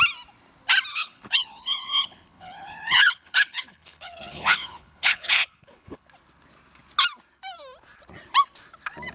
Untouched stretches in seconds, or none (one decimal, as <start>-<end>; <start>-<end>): 0.0-0.9; 6.1-9.1